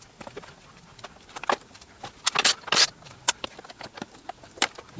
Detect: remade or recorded recorded